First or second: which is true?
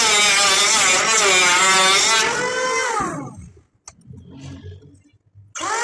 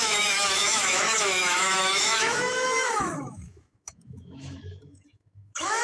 first